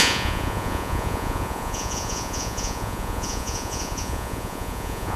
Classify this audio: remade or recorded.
remade